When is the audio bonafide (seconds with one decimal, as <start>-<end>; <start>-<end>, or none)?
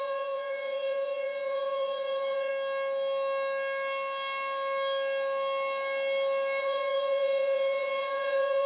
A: 2.5-6.6